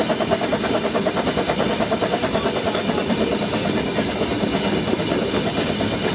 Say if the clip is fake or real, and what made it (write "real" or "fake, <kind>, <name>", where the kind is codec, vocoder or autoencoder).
real